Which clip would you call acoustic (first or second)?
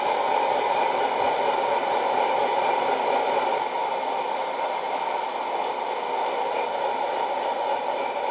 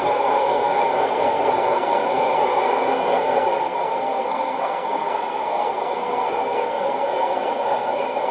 first